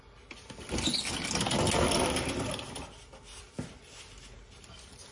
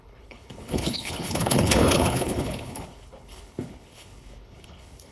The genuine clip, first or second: first